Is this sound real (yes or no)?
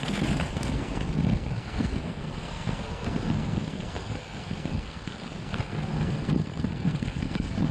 no